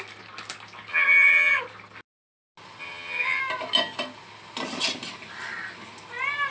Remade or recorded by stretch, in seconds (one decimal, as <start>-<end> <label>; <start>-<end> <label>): 0.0-0.9 recorded; 0.9-1.6 remade; 1.6-2.8 recorded; 2.8-3.4 remade; 3.4-6.5 recorded